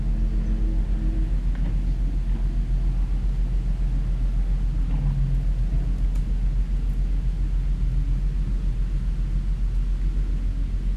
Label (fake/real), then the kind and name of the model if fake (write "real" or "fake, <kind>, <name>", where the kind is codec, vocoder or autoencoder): real